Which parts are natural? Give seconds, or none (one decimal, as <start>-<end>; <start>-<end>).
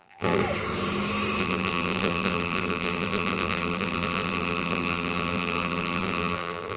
0.4-1.4